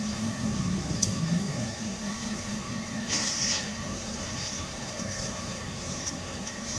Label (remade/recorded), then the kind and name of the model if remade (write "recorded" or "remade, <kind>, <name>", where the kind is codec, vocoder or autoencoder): remade, codec, SNAC